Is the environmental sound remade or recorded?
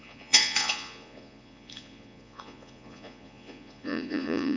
remade